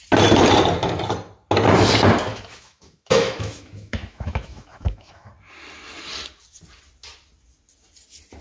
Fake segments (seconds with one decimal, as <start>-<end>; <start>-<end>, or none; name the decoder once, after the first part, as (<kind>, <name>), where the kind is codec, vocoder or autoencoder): 2.3-5.3 (autoencoder, DAC-VAE)